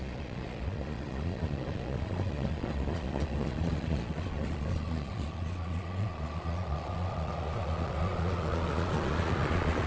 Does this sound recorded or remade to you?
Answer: remade